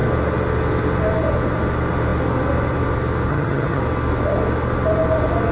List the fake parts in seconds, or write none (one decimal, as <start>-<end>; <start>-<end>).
3.3-3.8